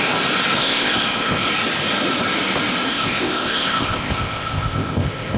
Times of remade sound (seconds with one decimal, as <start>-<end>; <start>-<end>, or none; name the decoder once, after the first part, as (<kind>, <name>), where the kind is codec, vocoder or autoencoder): 0.6-1.5 (codec, ZipCodec); 2.9-5.4